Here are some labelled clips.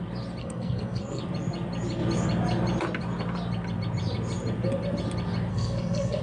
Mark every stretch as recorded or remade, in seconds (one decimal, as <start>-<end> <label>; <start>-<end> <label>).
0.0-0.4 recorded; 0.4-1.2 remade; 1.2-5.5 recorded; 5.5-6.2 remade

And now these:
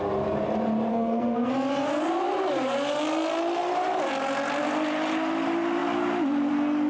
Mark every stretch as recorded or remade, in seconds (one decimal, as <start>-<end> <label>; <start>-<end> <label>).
0.0-0.9 recorded; 0.9-1.5 remade; 1.5-6.9 recorded

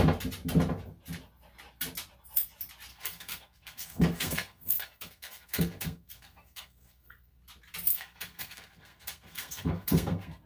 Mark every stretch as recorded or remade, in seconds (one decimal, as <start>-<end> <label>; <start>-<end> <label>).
0.0-2.9 recorded; 2.9-7.4 remade; 7.4-7.9 recorded; 7.9-10.5 remade

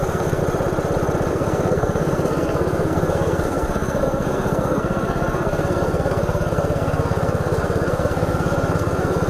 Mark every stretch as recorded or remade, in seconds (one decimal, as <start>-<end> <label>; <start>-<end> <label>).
0.0-0.4 remade; 0.4-1.3 recorded; 1.3-9.3 remade

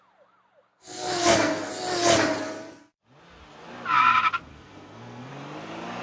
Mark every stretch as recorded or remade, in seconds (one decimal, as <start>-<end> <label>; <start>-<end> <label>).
0.0-0.7 recorded; 0.7-1.7 remade; 1.7-4.5 recorded; 4.5-5.3 remade; 5.3-6.0 recorded

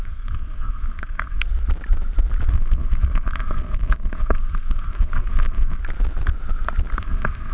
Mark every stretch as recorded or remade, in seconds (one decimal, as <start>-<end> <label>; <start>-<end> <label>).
0.0-1.4 remade; 1.4-2.5 recorded; 2.5-5.8 remade; 5.8-7.0 recorded; 7.0-7.5 remade

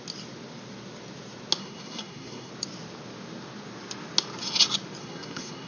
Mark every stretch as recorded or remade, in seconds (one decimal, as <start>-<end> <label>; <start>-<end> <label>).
0.0-1.6 recorded; 1.6-2.5 remade; 2.5-5.0 recorded; 5.0-5.7 remade